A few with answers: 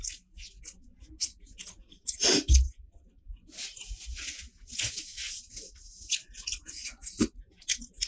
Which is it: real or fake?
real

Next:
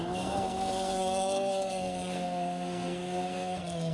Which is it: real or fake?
fake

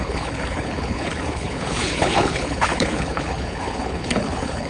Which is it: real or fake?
fake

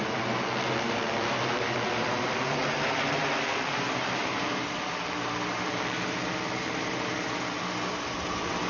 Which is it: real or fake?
real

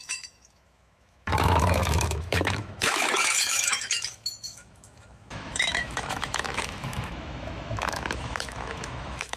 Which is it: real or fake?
fake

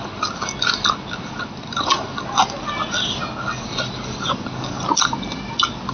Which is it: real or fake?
real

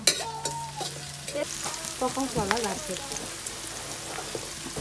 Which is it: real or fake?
real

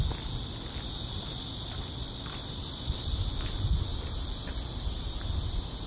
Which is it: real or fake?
real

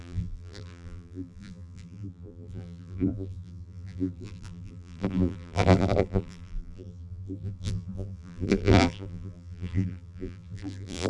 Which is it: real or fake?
fake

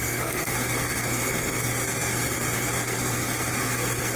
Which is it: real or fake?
fake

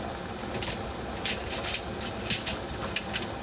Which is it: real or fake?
real